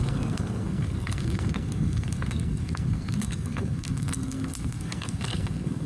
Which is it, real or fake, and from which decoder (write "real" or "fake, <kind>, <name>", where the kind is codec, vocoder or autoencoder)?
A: fake, codec, SNAC